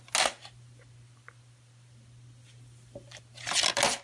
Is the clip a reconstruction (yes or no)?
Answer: no